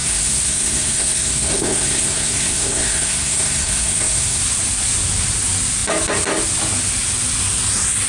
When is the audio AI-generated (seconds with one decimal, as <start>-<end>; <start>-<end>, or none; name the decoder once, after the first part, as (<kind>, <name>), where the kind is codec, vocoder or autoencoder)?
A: 0.0-4.4 (codec, SNAC)